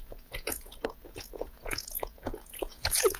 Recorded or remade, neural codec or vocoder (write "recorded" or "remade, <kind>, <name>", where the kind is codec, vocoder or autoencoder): remade, vocoder, Vocos